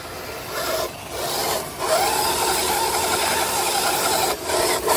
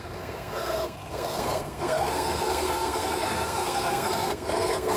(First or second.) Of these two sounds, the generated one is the second